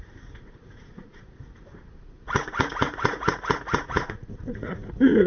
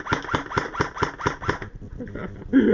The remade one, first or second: first